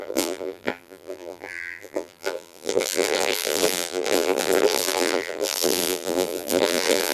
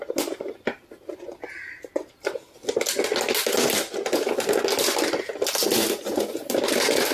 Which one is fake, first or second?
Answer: first